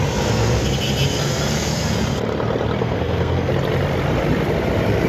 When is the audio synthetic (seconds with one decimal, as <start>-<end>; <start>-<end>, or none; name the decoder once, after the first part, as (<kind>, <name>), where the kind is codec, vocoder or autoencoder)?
2.8-3.5 (codec, SNAC)